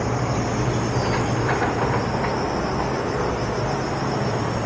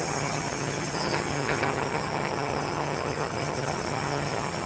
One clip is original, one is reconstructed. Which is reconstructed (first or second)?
second